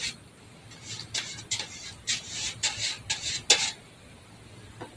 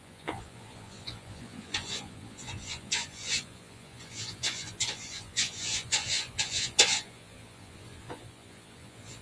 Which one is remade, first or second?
second